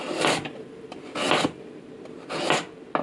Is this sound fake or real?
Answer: real